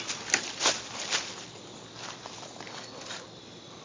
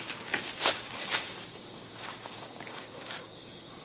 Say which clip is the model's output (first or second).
second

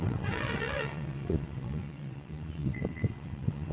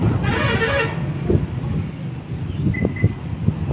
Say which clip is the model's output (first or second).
first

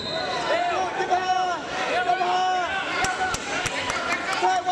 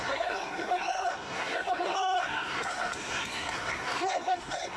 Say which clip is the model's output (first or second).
second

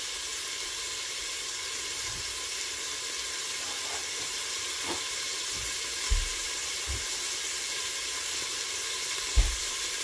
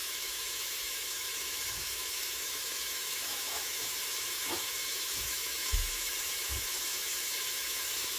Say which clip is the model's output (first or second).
second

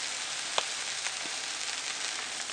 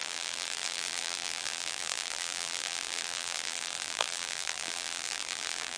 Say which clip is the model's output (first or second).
second